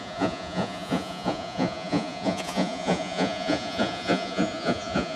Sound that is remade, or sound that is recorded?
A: remade